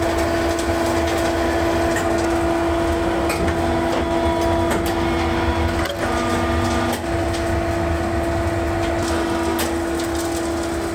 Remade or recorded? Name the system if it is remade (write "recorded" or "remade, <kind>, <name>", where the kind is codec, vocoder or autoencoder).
recorded